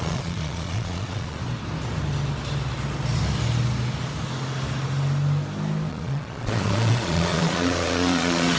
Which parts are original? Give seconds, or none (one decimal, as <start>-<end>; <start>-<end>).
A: 1.4-5.9